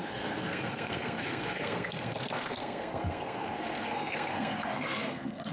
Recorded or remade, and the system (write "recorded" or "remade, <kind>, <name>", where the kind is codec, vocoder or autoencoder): remade, codec, SNAC